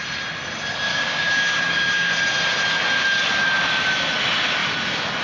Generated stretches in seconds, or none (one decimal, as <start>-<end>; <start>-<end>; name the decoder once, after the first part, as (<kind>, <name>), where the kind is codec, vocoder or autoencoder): 0.9-2.1 (codec, DAC)